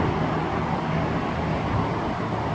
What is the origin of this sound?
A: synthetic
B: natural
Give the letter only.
B